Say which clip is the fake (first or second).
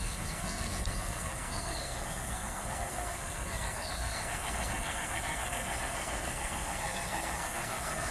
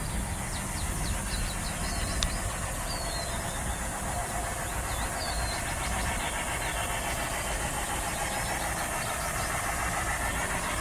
first